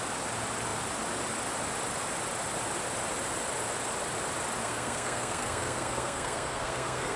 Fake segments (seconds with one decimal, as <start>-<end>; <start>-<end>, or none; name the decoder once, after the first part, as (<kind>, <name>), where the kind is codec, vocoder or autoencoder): 4.6-7.2 (codec, SNAC)